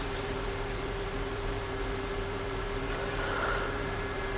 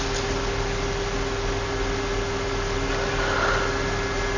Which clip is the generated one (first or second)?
first